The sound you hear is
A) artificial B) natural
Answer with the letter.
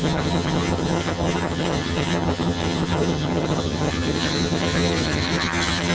A